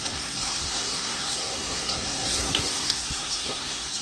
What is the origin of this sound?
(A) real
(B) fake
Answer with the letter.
B